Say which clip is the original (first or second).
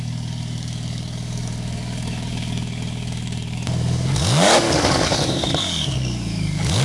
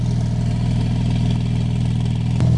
second